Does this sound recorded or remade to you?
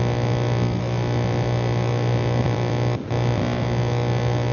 recorded